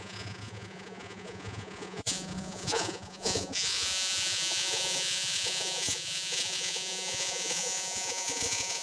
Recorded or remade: remade